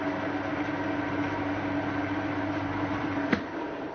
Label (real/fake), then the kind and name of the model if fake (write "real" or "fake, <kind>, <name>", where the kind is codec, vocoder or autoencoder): fake, vocoder, BigVGAN v2